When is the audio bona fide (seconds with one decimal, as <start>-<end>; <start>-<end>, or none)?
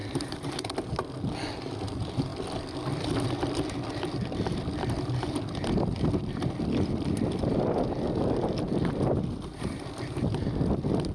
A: 0.7-11.1